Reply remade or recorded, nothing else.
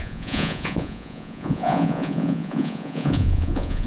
remade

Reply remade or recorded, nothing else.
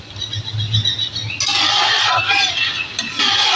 recorded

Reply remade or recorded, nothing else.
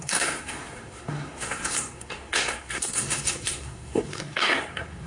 remade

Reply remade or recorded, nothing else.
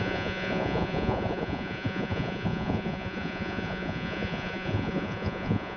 remade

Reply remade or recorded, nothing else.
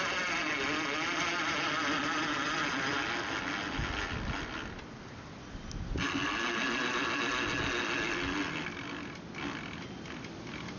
recorded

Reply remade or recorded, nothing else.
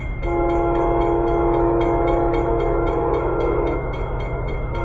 remade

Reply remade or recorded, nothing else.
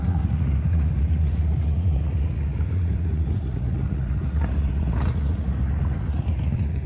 remade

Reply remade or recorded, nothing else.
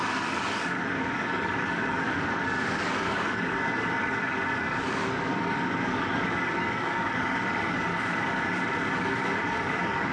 remade